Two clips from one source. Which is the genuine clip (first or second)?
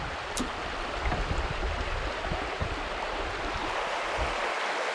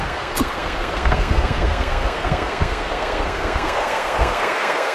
first